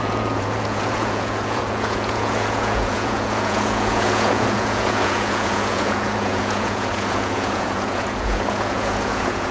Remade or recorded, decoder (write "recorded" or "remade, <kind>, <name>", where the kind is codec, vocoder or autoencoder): remade, vocoder, Vocos